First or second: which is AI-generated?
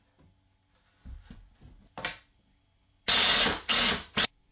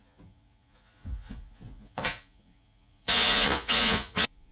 second